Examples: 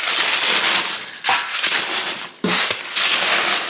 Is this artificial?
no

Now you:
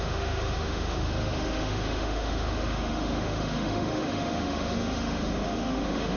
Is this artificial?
yes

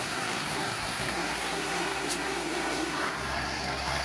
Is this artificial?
yes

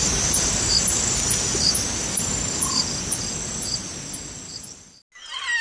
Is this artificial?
no